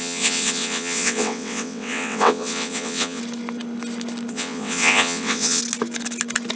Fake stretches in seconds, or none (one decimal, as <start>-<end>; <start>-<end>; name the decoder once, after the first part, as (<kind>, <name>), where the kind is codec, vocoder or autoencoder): 0.0-3.2 (vocoder, WaveNeXt); 4.3-5.6